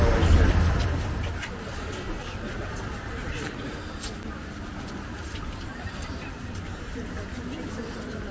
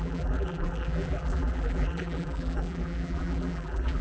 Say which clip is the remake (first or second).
second